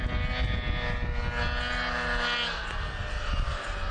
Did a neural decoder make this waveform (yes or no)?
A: no